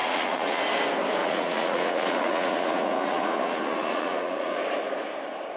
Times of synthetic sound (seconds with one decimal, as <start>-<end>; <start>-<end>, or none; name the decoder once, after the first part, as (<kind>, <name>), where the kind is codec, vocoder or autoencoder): 0.0-0.6 (vocoder, Vocos); 1.2-4.6